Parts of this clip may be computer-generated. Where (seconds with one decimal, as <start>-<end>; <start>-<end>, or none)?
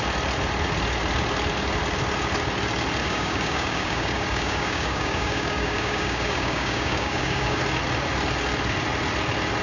3.0-7.6